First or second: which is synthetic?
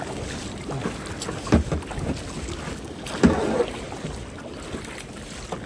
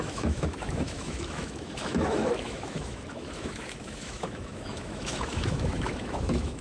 second